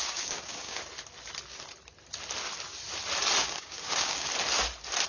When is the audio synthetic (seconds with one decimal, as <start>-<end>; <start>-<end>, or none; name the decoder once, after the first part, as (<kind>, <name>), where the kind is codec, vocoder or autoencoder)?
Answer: 0.0-0.8 (codec, DAC); 3.4-4.3